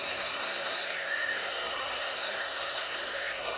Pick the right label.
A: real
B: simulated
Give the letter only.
B